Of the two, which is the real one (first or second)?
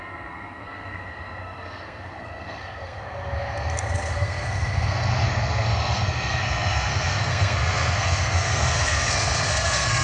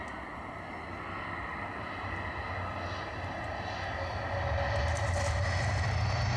second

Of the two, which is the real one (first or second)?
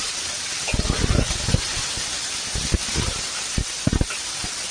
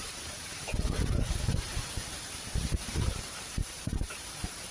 first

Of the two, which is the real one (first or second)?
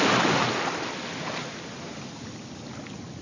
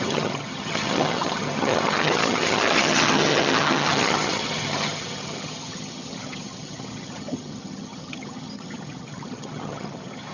first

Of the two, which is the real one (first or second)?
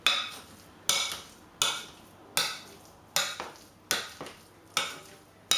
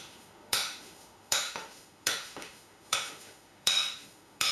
first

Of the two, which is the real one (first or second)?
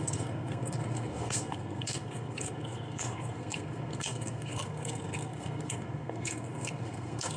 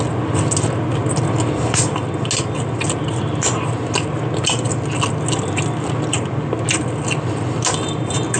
second